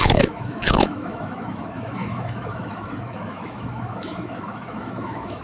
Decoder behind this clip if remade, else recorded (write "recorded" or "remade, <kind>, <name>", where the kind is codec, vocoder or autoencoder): remade, autoencoder, DAC-VAE